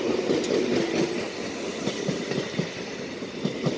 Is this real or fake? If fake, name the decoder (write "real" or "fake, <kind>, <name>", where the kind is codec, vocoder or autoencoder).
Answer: real